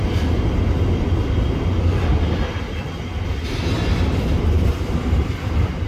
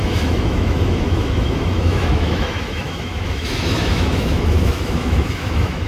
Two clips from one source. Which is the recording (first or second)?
first